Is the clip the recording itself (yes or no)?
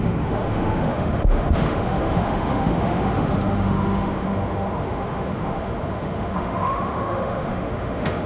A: no